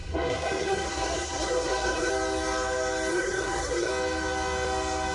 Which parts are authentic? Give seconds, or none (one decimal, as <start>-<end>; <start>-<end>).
2.1-3.1; 3.9-5.1